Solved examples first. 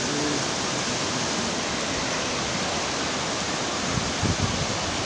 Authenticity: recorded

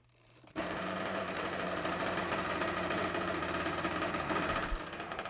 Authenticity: remade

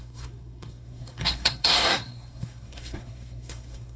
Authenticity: remade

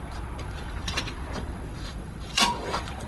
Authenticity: remade